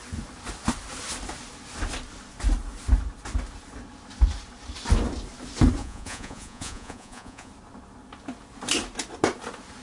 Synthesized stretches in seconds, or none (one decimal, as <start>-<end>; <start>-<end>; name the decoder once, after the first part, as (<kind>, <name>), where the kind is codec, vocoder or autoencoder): 5.8-7.5 (vocoder, Vocos)